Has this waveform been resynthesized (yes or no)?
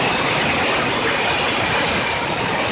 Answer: no